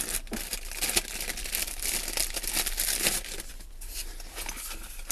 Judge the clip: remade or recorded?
recorded